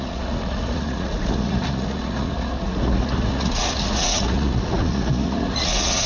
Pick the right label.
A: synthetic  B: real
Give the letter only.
A